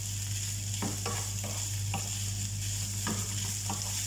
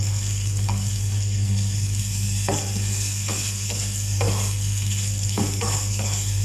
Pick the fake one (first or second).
second